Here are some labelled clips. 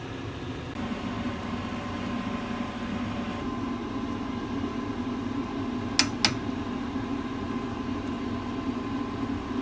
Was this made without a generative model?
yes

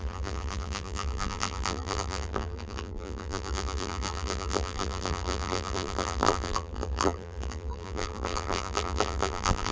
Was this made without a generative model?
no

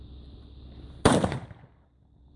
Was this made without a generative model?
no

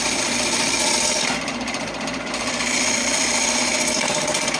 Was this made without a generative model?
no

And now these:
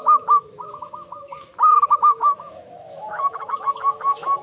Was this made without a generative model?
no